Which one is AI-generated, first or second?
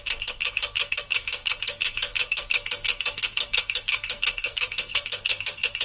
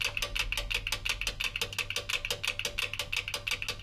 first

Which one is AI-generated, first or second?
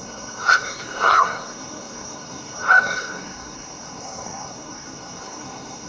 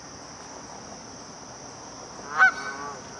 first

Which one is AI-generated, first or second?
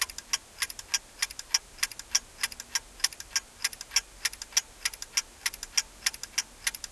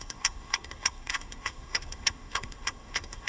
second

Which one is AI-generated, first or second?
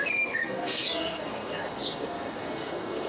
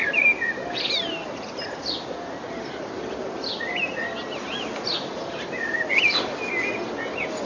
first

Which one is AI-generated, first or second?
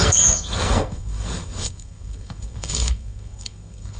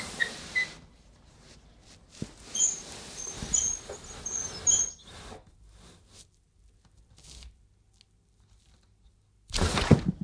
first